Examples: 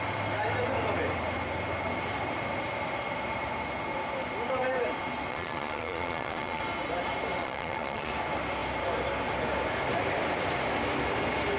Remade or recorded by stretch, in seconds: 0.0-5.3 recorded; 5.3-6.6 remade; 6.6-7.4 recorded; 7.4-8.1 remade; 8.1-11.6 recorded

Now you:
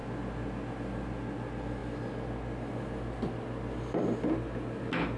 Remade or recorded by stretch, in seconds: 0.0-5.2 recorded

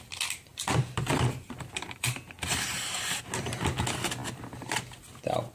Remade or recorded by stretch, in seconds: 0.0-0.5 recorded; 0.5-3.2 remade; 3.2-5.5 recorded

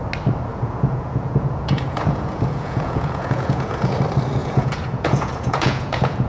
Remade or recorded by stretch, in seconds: 0.0-0.5 recorded; 0.5-4.0 remade; 4.0-4.4 recorded; 4.4-6.3 remade

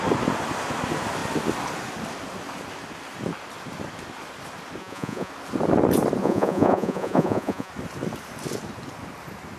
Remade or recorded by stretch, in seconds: 0.0-4.8 recorded; 4.8-5.3 remade; 5.3-6.2 recorded; 6.2-7.7 remade; 7.7-9.6 recorded

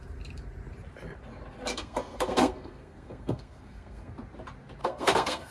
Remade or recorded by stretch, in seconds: 0.0-1.7 recorded; 1.7-4.1 remade; 4.1-4.8 recorded; 4.8-5.5 remade

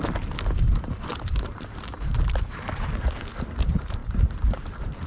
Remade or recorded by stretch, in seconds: 0.0-1.1 recorded; 1.1-2.4 remade; 2.4-4.0 recorded; 4.0-5.1 remade

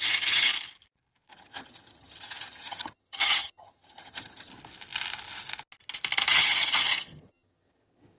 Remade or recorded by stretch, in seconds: 0.0-0.5 remade; 0.5-1.3 recorded; 1.3-4.5 remade; 4.5-6.3 recorded; 6.3-8.2 remade